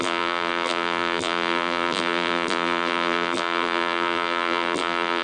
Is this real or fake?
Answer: fake